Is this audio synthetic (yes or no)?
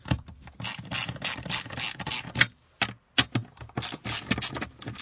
no